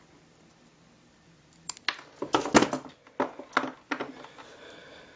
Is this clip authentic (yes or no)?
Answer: yes